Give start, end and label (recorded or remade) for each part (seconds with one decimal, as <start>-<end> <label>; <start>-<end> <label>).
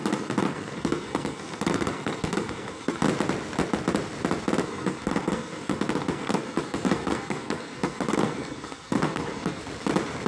0.0-3.0 remade; 3.0-4.6 recorded; 4.6-9.6 remade; 9.6-10.3 recorded